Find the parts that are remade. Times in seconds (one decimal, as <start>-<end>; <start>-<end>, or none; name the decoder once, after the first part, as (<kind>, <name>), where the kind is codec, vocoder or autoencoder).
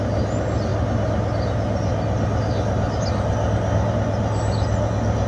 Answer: none